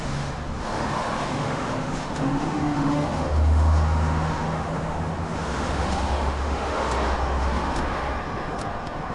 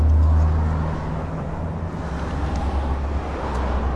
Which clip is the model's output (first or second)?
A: first